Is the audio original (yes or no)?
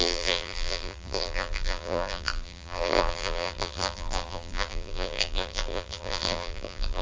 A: no